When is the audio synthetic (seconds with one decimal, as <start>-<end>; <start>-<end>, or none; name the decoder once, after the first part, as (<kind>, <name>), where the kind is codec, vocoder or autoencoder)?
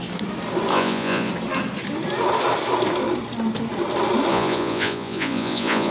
0.7-1.3 (vocoder, Vocos); 4.3-5.9